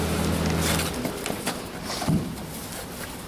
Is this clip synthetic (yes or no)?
no